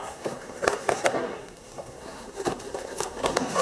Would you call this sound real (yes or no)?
no